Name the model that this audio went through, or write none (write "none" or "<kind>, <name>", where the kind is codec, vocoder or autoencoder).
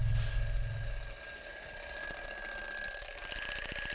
none